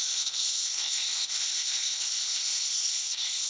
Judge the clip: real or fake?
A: fake